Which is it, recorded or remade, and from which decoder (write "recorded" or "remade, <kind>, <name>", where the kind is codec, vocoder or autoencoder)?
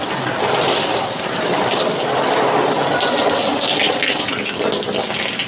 recorded